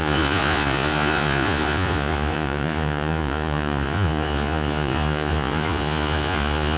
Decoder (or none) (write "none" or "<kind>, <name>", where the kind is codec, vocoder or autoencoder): vocoder, Vocos